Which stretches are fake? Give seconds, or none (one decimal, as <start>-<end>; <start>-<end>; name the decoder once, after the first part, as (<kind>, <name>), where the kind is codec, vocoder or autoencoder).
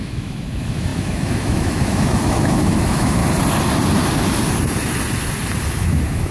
0.0-3.2 (autoencoder, DAC-VAE); 5.7-6.3